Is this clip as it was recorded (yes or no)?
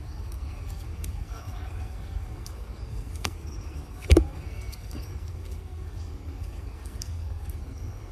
no